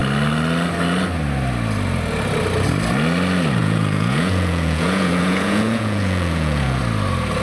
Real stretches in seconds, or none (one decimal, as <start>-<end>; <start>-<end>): 0.0-3.6; 6.8-7.4